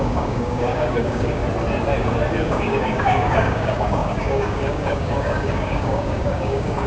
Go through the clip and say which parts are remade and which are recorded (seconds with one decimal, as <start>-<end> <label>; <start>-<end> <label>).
0.0-1.4 remade; 1.4-2.4 recorded; 2.4-6.9 remade